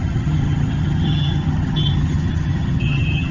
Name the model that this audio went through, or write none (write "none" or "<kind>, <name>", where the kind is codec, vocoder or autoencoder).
vocoder, HiFi-GAN